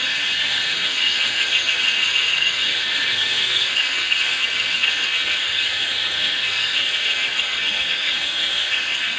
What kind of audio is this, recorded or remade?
remade